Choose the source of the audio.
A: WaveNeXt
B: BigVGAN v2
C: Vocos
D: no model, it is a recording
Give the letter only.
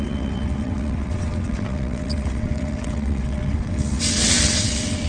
A